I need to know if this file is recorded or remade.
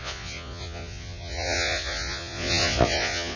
remade